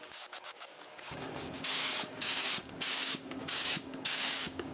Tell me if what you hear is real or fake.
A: fake